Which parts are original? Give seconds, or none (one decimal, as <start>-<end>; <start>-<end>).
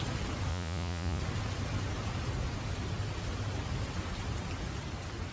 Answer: 0.0-0.5; 1.2-5.3